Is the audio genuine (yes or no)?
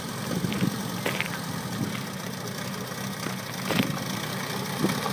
yes